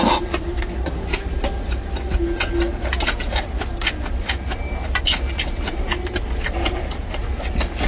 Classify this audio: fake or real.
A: real